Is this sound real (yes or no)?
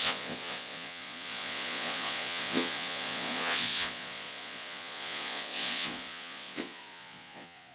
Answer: no